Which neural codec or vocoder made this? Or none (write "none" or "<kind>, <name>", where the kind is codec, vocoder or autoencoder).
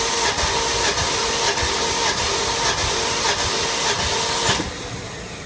none